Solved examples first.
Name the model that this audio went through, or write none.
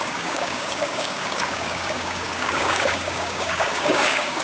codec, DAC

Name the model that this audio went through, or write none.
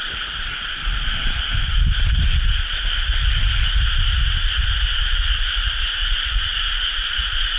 none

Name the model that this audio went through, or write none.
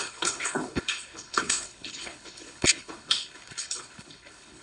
codec, HILCodec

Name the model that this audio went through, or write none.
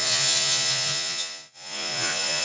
vocoder, Vocos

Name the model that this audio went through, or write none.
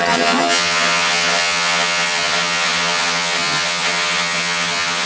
vocoder, HiFi-GAN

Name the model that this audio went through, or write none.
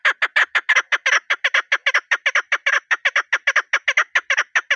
none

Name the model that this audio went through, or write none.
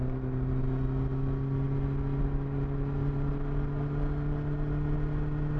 none